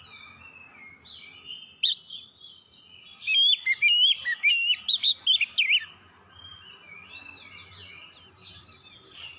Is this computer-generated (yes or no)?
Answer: no